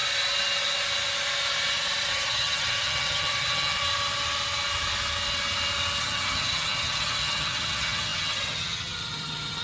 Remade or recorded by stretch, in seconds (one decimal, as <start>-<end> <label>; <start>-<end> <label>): 0.0-2.1 recorded; 2.1-3.8 remade; 3.8-6.0 recorded; 6.0-9.6 remade